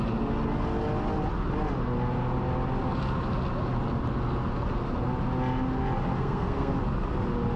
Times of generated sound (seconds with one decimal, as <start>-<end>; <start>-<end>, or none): 6.1-6.7